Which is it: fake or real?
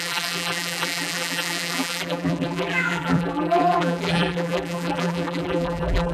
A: fake